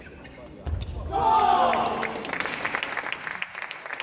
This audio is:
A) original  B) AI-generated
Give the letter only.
A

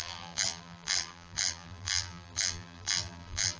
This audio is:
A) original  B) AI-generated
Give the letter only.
B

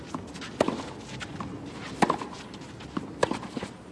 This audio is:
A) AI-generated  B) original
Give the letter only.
B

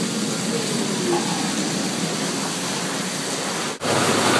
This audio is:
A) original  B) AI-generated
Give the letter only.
A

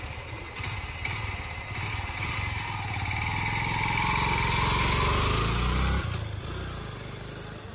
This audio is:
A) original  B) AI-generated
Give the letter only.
A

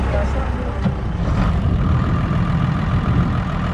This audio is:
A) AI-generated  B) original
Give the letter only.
A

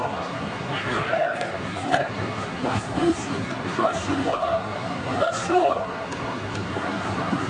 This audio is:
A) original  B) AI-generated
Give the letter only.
B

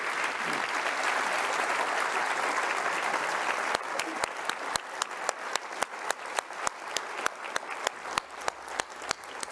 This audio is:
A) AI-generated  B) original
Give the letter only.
B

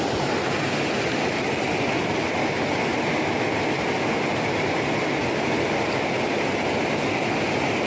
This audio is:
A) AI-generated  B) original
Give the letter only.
B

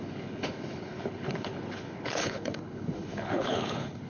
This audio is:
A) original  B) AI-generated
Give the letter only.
B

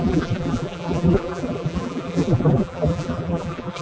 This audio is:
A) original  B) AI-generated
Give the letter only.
B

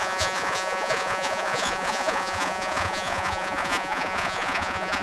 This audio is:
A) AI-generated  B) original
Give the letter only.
A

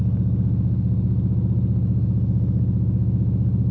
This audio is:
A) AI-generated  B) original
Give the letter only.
B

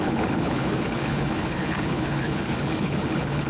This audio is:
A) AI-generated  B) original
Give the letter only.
A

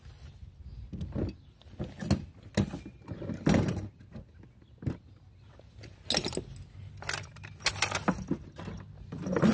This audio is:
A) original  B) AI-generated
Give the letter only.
A